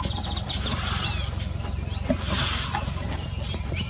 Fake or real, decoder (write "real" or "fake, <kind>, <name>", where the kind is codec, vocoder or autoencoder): real